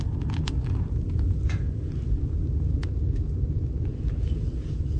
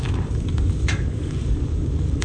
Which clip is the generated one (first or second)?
second